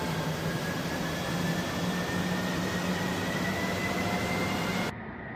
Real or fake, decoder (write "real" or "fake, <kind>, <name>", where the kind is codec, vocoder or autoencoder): real